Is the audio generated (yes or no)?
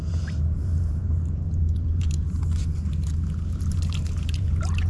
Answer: yes